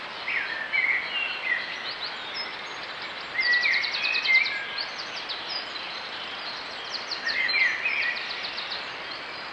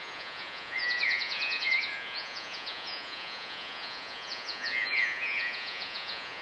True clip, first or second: first